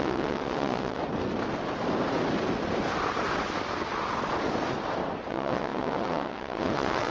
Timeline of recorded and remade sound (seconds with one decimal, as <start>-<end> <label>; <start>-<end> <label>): 0.0-1.0 remade; 1.0-5.3 recorded; 5.3-7.1 remade